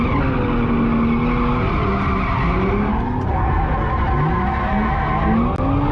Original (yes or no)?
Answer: yes